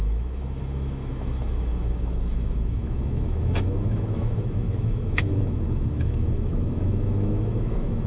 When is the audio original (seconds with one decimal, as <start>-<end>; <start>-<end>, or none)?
none